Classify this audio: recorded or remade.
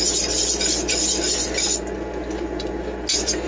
recorded